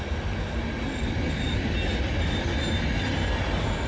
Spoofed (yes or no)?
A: no